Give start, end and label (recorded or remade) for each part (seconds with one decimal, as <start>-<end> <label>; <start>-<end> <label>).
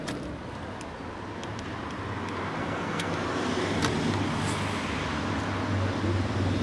0.0-2.6 recorded; 2.6-3.1 remade; 3.1-6.6 recorded